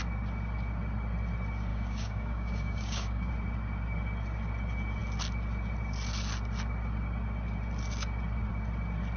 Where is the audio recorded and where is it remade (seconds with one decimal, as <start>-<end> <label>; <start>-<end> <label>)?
0.0-1.7 recorded; 1.7-3.3 remade; 3.3-9.2 recorded